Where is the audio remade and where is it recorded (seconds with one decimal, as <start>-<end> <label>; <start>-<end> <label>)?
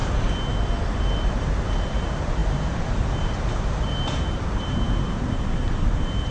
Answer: 0.0-1.2 recorded; 1.2-6.3 remade